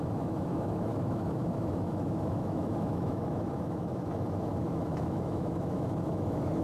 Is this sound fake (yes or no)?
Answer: yes